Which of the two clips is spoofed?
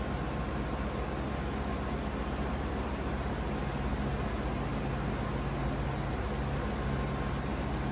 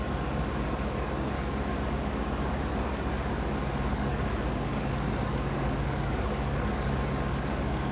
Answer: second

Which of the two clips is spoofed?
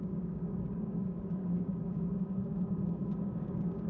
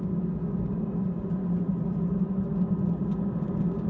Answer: first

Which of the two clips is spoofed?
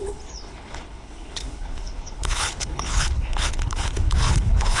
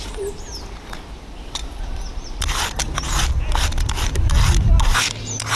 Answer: first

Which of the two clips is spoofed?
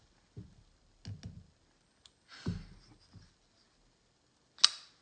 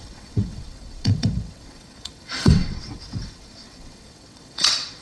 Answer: second